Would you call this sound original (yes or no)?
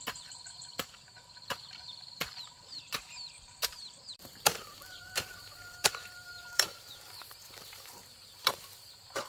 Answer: no